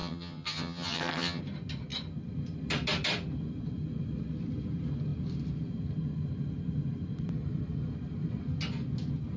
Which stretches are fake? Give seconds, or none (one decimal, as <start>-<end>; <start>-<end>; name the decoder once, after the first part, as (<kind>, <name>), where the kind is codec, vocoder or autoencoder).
0.0-1.4 (vocoder, HiFi-GAN)

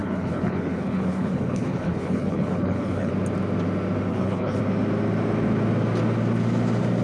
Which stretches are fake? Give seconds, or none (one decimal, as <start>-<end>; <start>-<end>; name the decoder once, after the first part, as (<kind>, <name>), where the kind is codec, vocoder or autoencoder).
0.0-3.1 (codec, HILCodec); 4.1-4.6

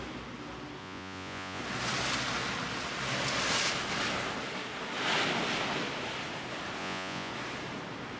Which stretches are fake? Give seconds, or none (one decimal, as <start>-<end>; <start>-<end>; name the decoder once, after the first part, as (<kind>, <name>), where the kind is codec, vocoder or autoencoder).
0.8-1.6 (vocoder, Vocos); 6.8-7.3

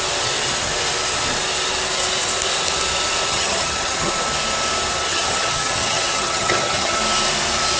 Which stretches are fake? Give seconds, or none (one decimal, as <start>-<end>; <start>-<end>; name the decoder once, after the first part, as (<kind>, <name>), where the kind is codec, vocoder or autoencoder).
3.3-4.1 (vocoder, HiFi-GAN); 5.1-7.0

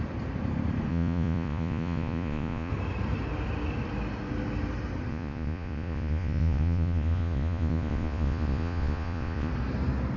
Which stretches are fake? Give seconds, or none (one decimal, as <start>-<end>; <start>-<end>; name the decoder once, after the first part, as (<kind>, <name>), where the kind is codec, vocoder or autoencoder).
0.9-2.7 (vocoder, Vocos); 5.1-9.5

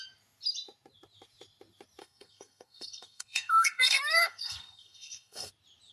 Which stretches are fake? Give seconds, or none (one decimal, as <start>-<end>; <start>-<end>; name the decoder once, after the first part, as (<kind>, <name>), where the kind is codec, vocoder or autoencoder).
2.0-5.5 (codec, SNAC)

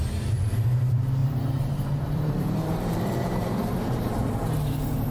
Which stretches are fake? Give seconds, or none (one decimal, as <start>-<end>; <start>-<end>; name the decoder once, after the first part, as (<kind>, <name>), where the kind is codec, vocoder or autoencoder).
1.2-4.3 (vocoder, BigVGAN v2)